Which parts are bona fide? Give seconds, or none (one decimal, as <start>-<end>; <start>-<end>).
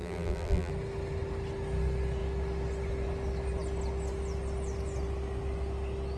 0.7-6.2